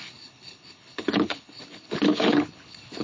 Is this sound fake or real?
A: fake